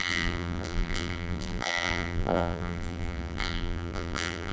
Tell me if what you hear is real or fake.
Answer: fake